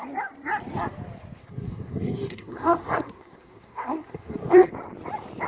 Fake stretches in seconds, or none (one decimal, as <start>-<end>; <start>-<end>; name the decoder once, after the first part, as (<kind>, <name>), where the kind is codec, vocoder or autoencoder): 1.4-4.7 (codec, SNAC)